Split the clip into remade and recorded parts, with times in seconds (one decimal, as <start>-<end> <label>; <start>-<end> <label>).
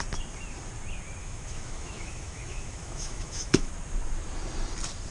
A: 0.0-1.2 recorded; 1.2-3.7 remade; 3.7-5.1 recorded